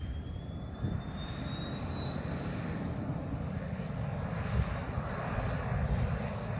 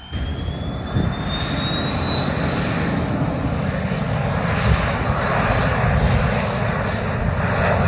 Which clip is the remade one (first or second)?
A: first